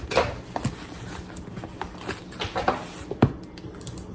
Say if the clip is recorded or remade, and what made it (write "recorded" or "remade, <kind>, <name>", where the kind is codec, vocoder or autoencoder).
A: recorded